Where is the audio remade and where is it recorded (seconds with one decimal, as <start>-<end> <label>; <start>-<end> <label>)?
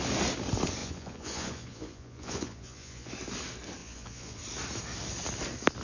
0.0-0.8 recorded; 0.8-3.1 remade; 3.1-3.8 recorded; 3.8-4.4 remade; 4.4-5.8 recorded